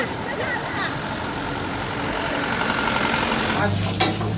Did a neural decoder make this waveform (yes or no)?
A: no